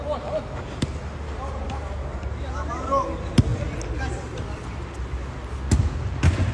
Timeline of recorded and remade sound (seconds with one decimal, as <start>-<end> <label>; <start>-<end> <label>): 0.0-3.5 recorded; 3.5-5.2 remade; 5.2-6.5 recorded